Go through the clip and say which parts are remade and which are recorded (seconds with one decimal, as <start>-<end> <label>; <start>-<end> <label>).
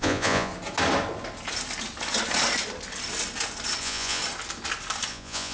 0.0-0.5 remade; 0.5-3.8 recorded; 3.8-4.2 remade; 4.2-5.1 recorded; 5.1-5.5 remade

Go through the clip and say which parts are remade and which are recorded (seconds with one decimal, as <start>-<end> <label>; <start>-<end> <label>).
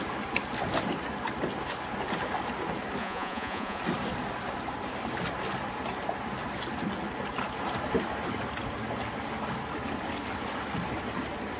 0.0-3.0 recorded; 3.0-3.8 remade; 3.8-11.6 recorded